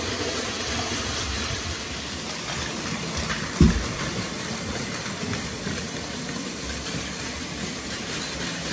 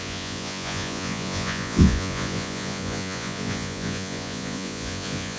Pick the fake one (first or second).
second